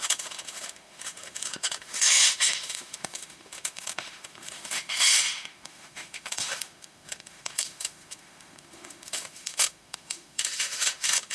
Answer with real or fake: fake